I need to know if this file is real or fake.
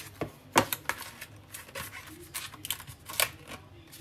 real